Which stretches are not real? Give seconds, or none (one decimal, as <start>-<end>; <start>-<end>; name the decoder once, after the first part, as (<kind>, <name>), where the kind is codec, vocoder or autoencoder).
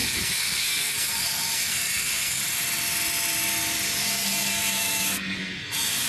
0.0-2.4 (codec, SNAC); 4.0-6.1